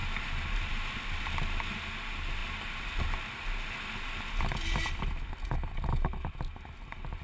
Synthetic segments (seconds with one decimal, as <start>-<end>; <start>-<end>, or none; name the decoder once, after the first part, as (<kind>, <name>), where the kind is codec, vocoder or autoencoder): none